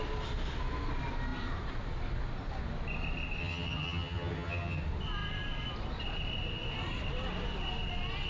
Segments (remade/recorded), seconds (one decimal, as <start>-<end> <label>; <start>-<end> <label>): 0.0-3.4 recorded; 3.4-4.8 remade; 4.8-8.3 recorded